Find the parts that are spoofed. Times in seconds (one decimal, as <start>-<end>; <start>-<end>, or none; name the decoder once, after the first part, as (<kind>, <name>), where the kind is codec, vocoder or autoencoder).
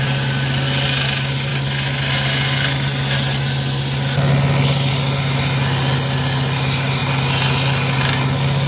none